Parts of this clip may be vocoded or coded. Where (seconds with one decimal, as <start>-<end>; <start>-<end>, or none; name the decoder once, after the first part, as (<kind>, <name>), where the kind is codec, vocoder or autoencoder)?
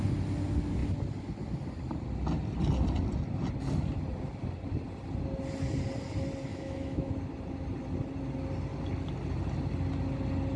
6.5-7.1 (autoencoder, DAC-VAE)